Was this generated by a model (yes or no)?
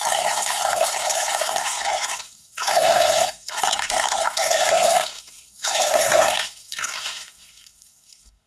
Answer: yes